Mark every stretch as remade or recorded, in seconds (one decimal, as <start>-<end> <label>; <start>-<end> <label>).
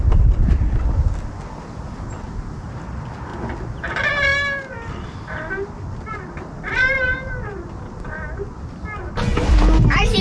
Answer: 0.0-10.2 recorded